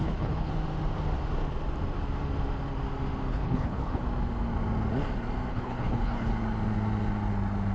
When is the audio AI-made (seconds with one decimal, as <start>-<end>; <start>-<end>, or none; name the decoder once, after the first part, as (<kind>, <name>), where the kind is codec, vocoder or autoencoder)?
0.0-0.5 (codec, HILCodec); 3.3-4.0; 5.5-6.3